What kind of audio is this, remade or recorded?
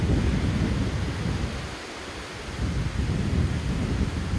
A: recorded